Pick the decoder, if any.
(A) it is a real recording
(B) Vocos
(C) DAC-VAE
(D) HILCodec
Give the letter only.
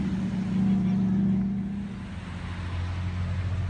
A